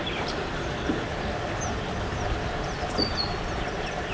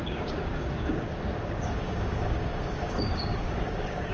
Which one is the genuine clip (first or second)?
first